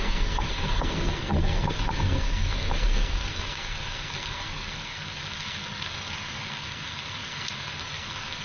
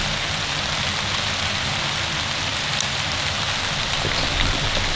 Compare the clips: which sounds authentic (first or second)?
second